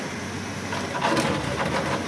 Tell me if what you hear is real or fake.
real